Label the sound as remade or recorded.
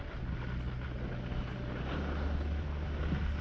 recorded